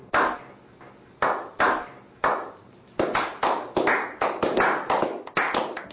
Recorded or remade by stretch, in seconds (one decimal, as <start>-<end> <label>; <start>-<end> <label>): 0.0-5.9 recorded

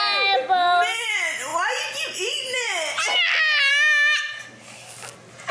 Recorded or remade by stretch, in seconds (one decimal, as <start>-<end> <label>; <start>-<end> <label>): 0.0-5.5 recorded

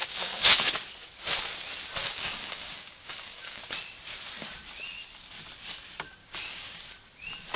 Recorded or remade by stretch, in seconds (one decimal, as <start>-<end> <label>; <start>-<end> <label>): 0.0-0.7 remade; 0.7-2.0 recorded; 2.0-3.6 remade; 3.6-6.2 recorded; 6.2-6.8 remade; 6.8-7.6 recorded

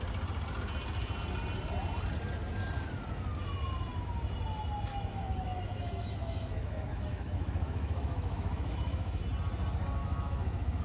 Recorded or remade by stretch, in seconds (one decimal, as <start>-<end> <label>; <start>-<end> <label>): 0.0-4.9 recorded; 4.9-9.2 remade; 9.2-10.0 recorded; 10.0-10.8 remade

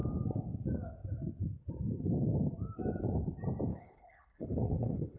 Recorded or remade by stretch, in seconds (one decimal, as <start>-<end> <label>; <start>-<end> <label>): 0.0-3.7 recorded; 3.7-5.2 remade

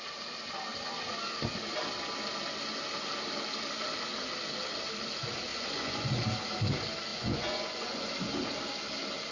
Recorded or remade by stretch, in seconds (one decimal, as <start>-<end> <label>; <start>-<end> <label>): 0.0-5.5 recorded; 5.5-6.1 remade; 6.1-7.1 recorded; 7.1-8.1 remade; 8.1-9.3 recorded

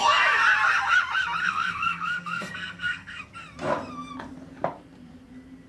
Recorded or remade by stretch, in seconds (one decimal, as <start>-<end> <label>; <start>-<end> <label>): 0.0-1.4 recorded; 1.4-3.2 remade; 3.2-5.7 recorded

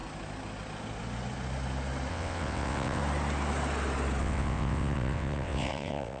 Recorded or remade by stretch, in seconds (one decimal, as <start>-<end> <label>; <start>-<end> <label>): 0.0-2.1 recorded; 2.1-3.0 remade; 3.0-4.2 recorded; 4.2-6.2 remade